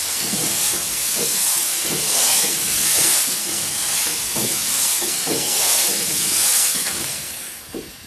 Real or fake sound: fake